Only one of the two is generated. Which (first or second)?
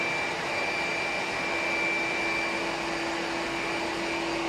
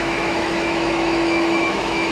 second